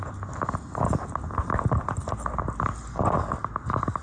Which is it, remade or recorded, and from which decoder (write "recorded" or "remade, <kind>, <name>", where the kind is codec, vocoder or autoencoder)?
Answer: recorded